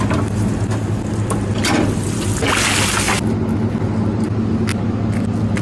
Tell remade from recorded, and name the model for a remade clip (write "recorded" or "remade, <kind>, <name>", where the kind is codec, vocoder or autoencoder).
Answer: recorded